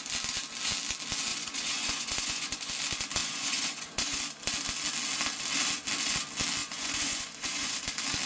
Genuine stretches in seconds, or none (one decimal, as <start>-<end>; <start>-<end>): 0.0-1.3; 2.7-3.2; 4.2-6.6; 7.8-8.3